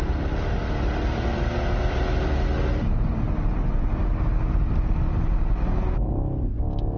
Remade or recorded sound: recorded